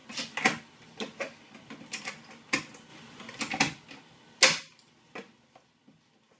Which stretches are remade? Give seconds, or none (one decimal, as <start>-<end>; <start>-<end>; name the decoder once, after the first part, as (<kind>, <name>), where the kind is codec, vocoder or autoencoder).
none